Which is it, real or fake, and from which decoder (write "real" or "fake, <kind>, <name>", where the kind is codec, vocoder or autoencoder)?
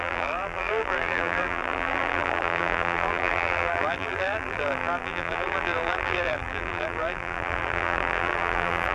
fake, vocoder, BigVGAN v2